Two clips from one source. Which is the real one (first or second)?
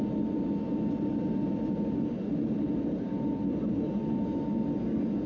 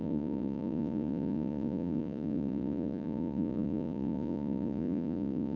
first